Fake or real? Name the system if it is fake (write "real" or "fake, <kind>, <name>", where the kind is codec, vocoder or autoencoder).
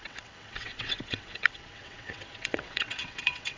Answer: fake, vocoder, WaveNeXt